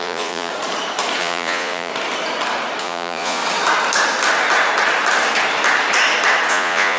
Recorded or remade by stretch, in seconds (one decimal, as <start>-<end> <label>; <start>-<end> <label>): 0.0-0.5 remade; 0.5-1.2 recorded; 1.2-1.9 remade; 1.9-2.8 recorded; 2.8-3.4 remade; 3.4-6.5 recorded; 6.5-7.0 remade

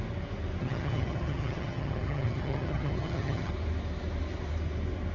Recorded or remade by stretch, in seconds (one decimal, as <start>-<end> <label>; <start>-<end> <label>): 0.0-0.6 recorded; 0.6-3.5 remade; 3.5-5.1 recorded